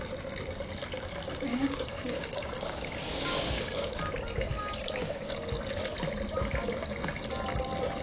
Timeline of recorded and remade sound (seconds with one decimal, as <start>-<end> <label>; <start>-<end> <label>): 0.0-1.5 recorded; 1.5-3.9 remade; 3.9-4.5 recorded; 4.5-5.3 remade; 5.3-8.0 recorded